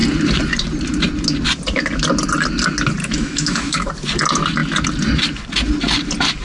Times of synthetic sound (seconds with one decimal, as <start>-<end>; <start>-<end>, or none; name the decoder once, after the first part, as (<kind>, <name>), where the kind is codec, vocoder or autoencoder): 3.0-3.9 (autoencoder, DAC-VAE)

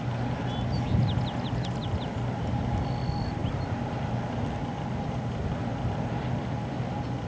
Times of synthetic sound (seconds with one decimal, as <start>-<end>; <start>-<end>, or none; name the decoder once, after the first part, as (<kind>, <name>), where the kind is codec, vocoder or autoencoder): none

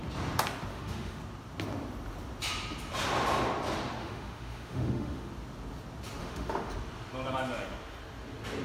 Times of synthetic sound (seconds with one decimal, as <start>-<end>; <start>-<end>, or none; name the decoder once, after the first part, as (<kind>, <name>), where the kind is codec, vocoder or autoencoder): 0.7-1.2 (autoencoder, DAC-VAE); 4.0-5.3; 6.2-6.7

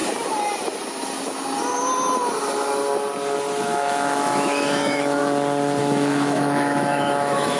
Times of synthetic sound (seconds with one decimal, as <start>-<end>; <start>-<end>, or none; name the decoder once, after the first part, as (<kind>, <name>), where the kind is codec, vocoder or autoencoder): 3.6-5.2 (autoencoder, DAC-VAE); 5.8-7.6

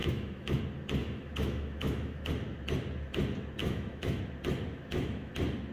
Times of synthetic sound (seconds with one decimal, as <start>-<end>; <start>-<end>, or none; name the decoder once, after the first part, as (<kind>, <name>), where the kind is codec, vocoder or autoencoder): 0.0-0.6 (autoencoder, DAC-VAE); 1.0-2.3; 3.6-4.2; 4.7-5.3

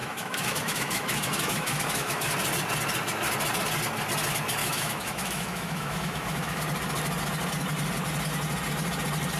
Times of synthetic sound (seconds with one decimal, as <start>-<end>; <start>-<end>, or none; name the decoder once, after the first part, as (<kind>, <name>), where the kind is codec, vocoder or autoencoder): 0.0-2.3 (autoencoder, DAC-VAE); 4.6-6.6

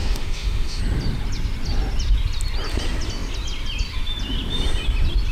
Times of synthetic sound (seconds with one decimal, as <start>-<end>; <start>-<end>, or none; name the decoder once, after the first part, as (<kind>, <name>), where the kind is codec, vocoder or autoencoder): 0.0-0.8 (autoencoder, DAC-VAE)